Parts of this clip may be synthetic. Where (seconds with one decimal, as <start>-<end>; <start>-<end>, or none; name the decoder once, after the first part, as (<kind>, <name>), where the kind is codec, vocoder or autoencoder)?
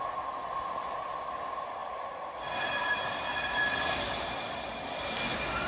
0.4-1.1 (vocoder, BigVGAN v2); 1.8-5.2